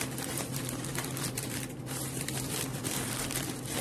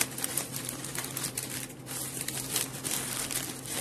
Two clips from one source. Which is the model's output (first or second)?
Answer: first